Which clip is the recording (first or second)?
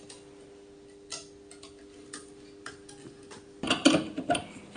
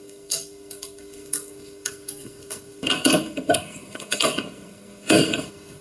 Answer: first